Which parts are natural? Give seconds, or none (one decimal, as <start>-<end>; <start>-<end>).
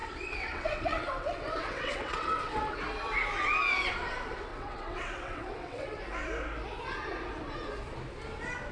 2.8-4.5; 6.0-8.7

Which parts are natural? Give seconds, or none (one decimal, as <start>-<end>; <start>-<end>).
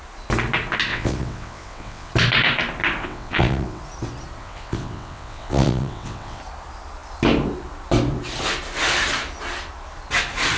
0.0-0.9; 2.1-3.0; 3.8-4.4; 6.4-10.6